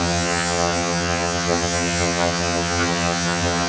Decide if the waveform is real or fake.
fake